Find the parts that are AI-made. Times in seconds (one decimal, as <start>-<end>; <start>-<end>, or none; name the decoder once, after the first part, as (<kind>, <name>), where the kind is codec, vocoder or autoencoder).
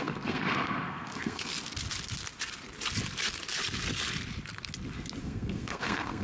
0.0-1.5 (codec, SNAC); 5.2-6.2